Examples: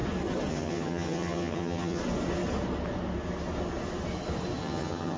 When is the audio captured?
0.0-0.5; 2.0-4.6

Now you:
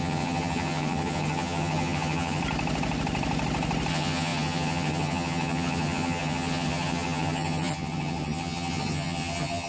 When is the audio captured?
2.4-3.9

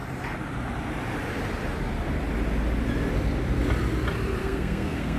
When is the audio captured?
0.0-4.4

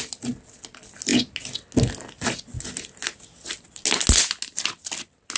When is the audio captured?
0.0-5.4

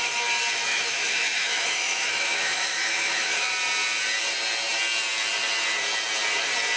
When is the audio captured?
0.0-0.7; 3.5-6.8